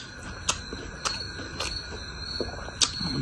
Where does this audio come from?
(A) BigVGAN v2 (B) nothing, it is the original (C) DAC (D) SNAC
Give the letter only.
B